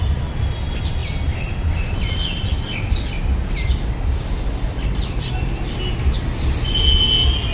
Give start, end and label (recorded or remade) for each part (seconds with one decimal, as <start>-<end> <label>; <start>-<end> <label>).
0.0-7.5 recorded